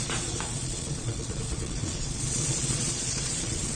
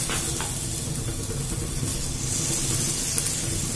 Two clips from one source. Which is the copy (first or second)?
first